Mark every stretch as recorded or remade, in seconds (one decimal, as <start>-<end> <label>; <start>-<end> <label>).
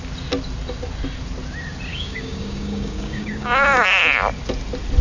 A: 0.0-1.9 recorded; 1.9-4.0 remade; 4.0-5.0 recorded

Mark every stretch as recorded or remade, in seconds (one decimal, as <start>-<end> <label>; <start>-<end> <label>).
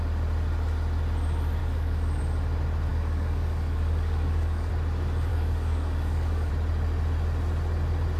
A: 0.0-1.6 recorded; 1.6-2.2 remade; 2.2-2.9 recorded; 2.9-4.7 remade; 4.7-5.3 recorded; 5.3-6.5 remade; 6.5-8.2 recorded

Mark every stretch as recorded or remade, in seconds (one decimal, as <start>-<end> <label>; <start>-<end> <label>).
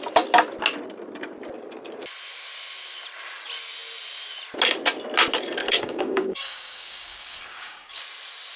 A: 0.0-5.6 recorded; 5.6-8.0 remade; 8.0-8.6 recorded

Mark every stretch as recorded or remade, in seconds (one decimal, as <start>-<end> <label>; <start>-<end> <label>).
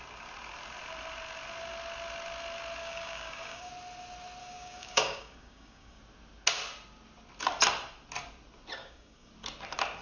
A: 0.0-2.8 recorded; 2.8-3.7 remade; 3.7-4.4 recorded; 4.4-6.0 remade; 6.0-8.8 recorded; 8.8-9.3 remade; 9.3-10.0 recorded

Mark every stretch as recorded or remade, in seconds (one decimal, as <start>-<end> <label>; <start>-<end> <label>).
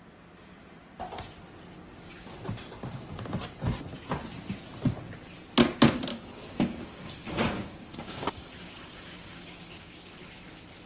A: 0.0-6.1 recorded; 6.1-10.2 remade; 10.2-10.9 recorded